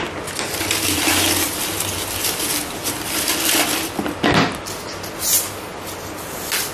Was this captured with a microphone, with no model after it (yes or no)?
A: yes